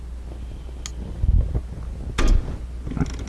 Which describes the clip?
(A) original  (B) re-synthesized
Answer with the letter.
A